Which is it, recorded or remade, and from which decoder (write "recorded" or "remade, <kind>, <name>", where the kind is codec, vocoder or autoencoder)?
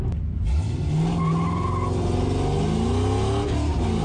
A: recorded